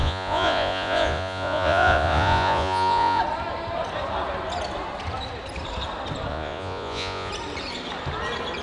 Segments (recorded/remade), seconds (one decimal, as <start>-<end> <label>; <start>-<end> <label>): 0.0-3.2 remade; 3.2-6.3 recorded; 6.3-7.3 remade; 7.3-8.6 recorded